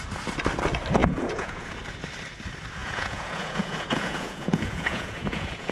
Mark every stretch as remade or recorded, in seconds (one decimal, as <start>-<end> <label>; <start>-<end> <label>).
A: 0.0-1.0 recorded; 1.0-1.7 remade; 1.7-2.8 recorded; 2.8-5.7 remade